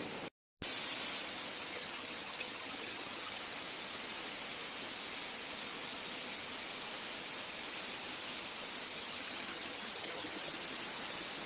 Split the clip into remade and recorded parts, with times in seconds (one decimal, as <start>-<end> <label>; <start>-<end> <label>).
0.0-1.7 recorded; 1.7-3.4 remade; 3.4-9.0 recorded; 9.0-10.5 remade; 10.5-11.5 recorded